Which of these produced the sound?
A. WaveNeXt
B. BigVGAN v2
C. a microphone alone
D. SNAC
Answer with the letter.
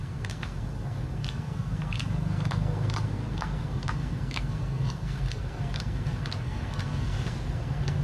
D